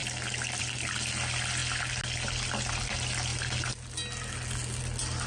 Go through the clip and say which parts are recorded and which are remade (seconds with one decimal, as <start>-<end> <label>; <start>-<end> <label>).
0.0-5.3 recorded